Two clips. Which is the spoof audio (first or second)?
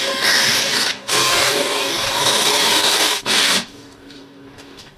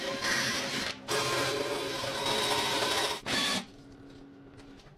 first